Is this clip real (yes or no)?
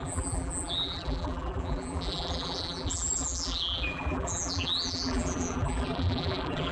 no